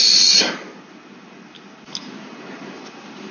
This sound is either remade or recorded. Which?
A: recorded